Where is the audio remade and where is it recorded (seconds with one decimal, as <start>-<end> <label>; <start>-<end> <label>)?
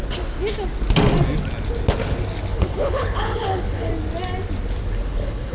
0.0-2.5 recorded; 2.5-3.9 remade; 3.9-5.1 recorded; 5.1-5.5 remade